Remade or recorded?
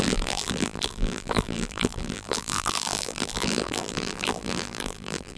remade